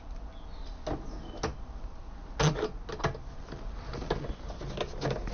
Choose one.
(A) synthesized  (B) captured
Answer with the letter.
B